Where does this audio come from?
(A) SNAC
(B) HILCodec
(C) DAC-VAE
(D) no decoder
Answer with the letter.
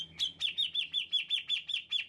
D